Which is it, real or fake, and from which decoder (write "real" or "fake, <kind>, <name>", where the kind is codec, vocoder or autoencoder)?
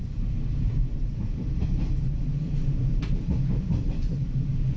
fake, vocoder, BigVGAN v2